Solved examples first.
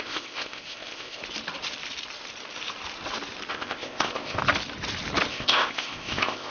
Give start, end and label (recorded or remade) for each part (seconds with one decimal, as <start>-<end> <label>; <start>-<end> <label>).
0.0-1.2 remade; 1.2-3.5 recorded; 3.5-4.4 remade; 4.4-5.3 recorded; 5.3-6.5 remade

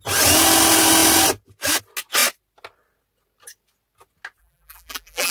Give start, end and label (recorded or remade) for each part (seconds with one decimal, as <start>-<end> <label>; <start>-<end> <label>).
0.0-4.4 recorded; 4.4-5.3 remade

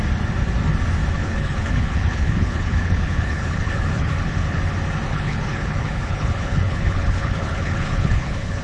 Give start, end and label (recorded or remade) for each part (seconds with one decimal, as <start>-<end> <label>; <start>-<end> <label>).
0.0-1.2 recorded; 1.2-4.6 remade; 4.6-5.1 recorded; 5.1-8.6 remade

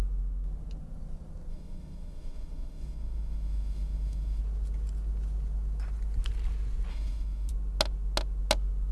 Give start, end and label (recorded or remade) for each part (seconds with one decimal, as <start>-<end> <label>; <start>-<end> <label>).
0.0-1.5 recorded; 1.5-4.4 remade; 4.4-6.9 recorded; 6.9-7.5 remade; 7.5-8.9 recorded

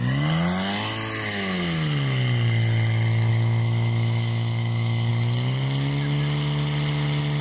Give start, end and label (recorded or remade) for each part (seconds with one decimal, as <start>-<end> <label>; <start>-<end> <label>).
0.0-3.3 recorded; 3.3-5.1 remade; 5.1-7.4 recorded